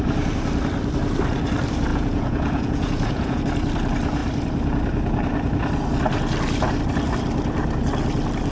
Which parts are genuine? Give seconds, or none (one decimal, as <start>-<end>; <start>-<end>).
0.0-1.9; 3.4-8.5